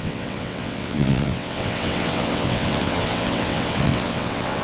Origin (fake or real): fake